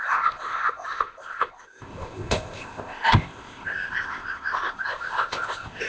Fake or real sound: fake